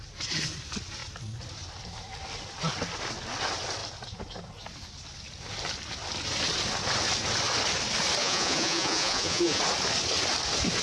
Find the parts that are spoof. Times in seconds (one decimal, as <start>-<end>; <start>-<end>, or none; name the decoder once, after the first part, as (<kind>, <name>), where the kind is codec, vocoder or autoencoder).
8.2-9.6 (vocoder, Vocos)